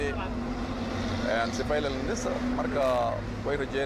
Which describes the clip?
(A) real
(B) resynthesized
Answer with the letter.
A